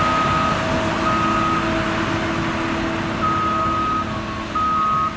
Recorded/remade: recorded